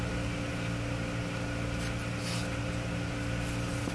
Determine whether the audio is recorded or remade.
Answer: recorded